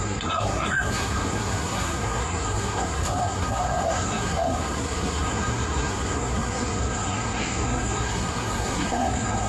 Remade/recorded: remade